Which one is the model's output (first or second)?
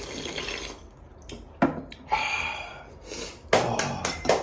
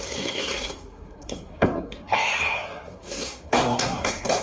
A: second